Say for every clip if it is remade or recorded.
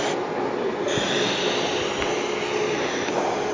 recorded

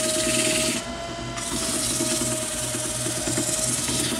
recorded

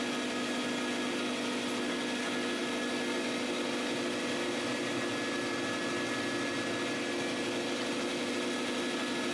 recorded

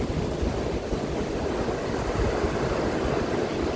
recorded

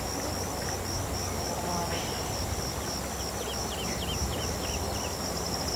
recorded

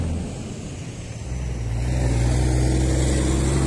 recorded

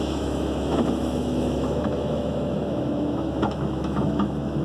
remade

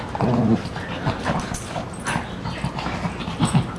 recorded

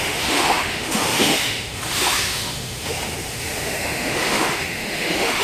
remade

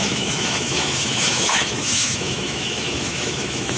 remade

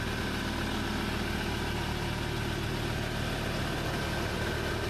recorded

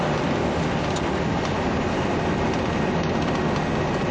recorded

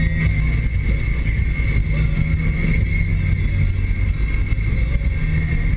recorded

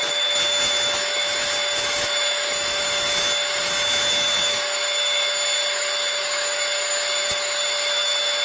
remade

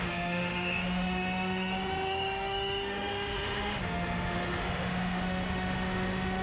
remade